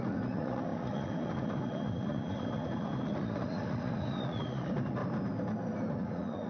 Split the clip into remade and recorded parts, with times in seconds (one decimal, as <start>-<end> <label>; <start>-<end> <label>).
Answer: 0.0-5.0 remade; 5.0-5.9 recorded; 5.9-6.5 remade